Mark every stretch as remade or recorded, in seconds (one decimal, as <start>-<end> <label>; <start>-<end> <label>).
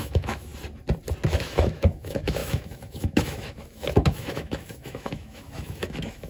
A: 0.0-0.5 remade; 0.5-1.3 recorded; 1.3-6.3 remade